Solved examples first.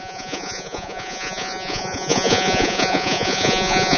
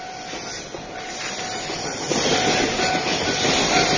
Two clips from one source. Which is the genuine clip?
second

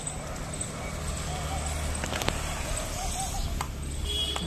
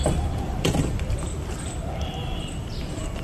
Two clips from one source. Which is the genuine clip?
first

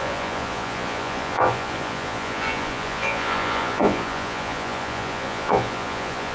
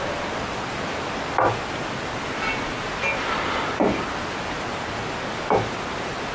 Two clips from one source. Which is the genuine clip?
second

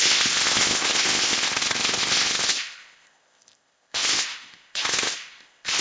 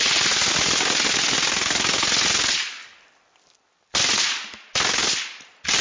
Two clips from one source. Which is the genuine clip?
second